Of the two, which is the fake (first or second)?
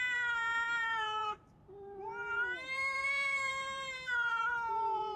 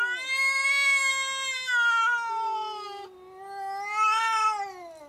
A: first